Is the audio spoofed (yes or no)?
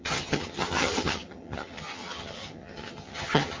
yes